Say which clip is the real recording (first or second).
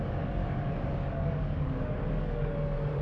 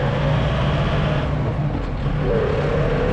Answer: second